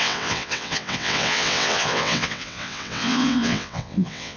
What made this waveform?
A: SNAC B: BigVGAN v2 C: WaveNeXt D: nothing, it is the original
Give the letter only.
C